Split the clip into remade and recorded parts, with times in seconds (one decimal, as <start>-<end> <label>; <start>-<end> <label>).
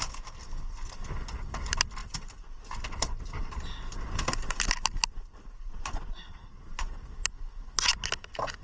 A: 0.0-8.6 recorded